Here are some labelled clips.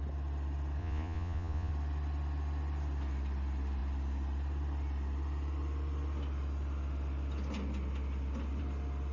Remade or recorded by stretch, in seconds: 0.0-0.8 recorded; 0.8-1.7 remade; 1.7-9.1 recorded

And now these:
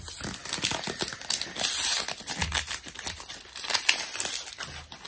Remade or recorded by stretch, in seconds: 0.0-5.1 recorded

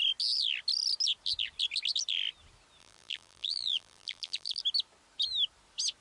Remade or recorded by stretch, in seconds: 0.0-2.8 recorded; 2.8-4.6 remade; 4.6-6.0 recorded

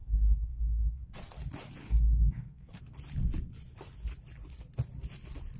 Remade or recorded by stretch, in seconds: 0.0-1.0 remade; 1.0-1.8 recorded; 1.8-2.8 remade; 2.8-5.6 recorded

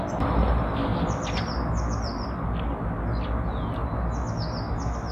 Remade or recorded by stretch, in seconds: 0.0-5.1 recorded

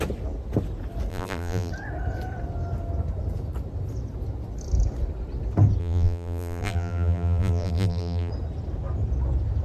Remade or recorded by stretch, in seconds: 0.0-1.1 recorded; 1.1-1.7 remade; 1.7-5.8 recorded; 5.8-8.3 remade; 8.3-9.6 recorded

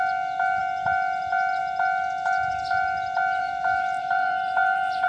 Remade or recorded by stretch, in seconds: 0.0-3.4 recorded; 3.4-5.1 remade

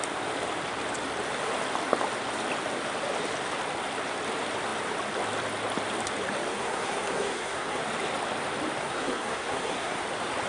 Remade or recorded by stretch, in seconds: 0.0-6.5 recorded; 6.5-7.8 remade; 7.8-8.8 recorded; 8.8-10.0 remade; 10.0-10.5 recorded